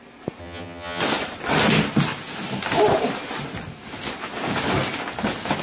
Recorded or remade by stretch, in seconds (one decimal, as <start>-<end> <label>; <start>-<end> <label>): 0.0-0.4 recorded; 0.4-1.0 remade; 1.0-5.6 recorded

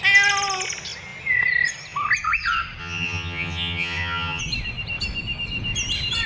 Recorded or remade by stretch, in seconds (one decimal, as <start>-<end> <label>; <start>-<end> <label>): 0.0-2.8 recorded; 2.8-4.4 remade; 4.4-6.3 recorded

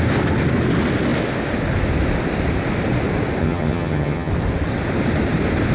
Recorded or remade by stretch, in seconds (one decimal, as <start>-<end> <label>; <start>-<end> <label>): 0.0-3.4 recorded; 3.4-4.3 remade; 4.3-5.7 recorded

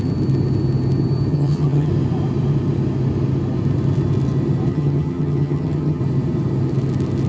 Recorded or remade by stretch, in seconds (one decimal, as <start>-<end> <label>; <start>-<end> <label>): 0.0-1.3 recorded; 1.3-1.9 remade; 1.9-4.7 recorded; 4.7-6.0 remade; 6.0-7.3 recorded

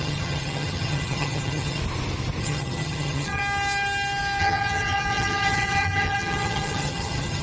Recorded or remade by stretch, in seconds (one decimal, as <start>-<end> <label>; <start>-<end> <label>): 0.0-1.8 remade; 1.8-2.4 recorded; 2.4-3.4 remade; 3.4-4.4 recorded; 4.4-7.4 remade

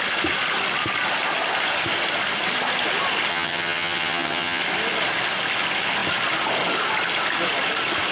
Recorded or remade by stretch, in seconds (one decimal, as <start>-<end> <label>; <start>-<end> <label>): 0.0-3.3 recorded; 3.3-4.6 remade; 4.6-8.1 recorded